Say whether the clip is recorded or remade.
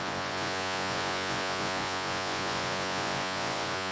remade